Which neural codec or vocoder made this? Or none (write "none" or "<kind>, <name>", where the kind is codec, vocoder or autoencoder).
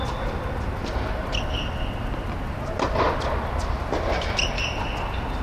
none